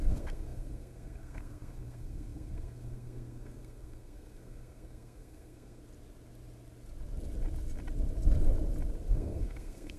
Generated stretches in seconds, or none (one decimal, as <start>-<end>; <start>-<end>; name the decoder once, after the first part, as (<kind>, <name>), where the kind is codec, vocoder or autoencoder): 0.0-5.8 (codec, SNAC); 9.1-10.0